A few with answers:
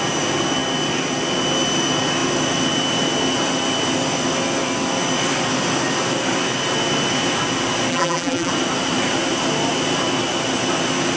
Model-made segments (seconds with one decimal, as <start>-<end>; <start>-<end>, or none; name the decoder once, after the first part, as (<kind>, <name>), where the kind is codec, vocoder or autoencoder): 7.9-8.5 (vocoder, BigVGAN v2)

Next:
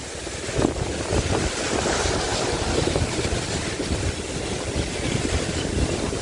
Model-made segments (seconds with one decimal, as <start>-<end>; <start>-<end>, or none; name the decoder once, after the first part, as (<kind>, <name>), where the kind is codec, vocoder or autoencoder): none

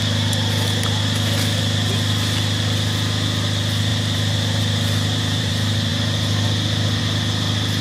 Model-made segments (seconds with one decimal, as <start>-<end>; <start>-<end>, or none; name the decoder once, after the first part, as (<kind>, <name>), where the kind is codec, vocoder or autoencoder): 3.9-5.5 (vocoder, BigVGAN v2)